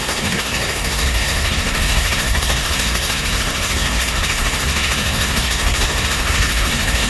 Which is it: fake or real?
fake